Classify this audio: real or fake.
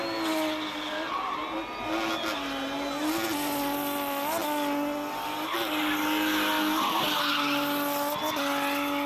real